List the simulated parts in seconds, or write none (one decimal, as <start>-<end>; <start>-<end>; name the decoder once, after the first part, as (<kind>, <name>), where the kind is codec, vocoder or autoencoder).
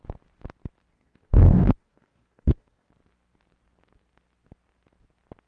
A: 0.9-2.9 (codec, DAC)